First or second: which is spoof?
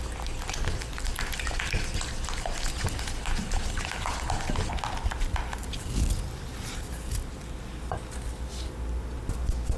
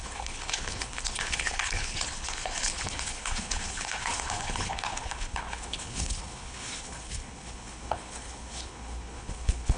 second